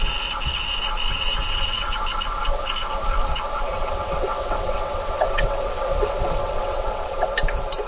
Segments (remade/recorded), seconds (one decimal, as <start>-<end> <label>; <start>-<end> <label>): 0.0-1.1 recorded; 1.1-1.9 remade; 1.9-3.7 recorded; 3.7-7.3 remade; 7.3-7.9 recorded

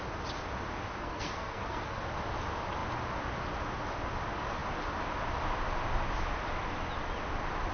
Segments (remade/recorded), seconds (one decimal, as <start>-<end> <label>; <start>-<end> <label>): 0.0-1.0 recorded; 1.0-2.0 remade; 2.0-7.7 recorded

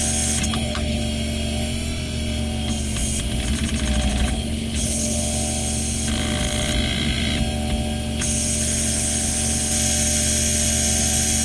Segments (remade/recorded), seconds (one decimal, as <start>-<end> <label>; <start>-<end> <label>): 0.0-0.5 recorded; 0.5-1.0 remade; 1.0-4.1 recorded; 4.1-5.2 remade; 5.2-11.4 recorded

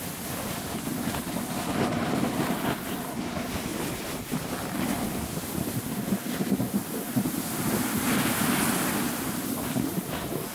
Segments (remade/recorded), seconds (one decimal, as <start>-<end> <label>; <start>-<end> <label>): 0.0-3.7 recorded; 3.7-6.5 remade; 6.5-10.5 recorded

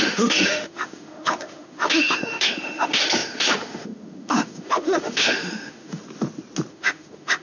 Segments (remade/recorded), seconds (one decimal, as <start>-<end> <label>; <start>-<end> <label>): 0.0-6.0 remade; 6.0-6.7 recorded; 6.7-7.4 remade